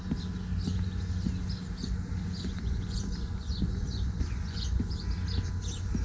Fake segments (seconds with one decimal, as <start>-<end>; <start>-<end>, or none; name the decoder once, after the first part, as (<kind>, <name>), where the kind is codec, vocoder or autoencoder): 2.5-4.9 (vocoder, Vocos)